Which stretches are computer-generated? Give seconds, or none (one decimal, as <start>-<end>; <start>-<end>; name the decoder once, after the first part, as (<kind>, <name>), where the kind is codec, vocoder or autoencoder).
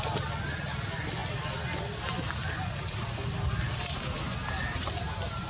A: none